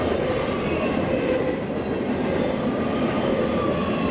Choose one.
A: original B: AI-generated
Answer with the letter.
A